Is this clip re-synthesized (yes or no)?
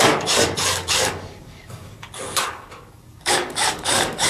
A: yes